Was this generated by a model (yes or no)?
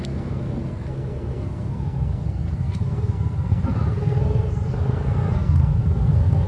yes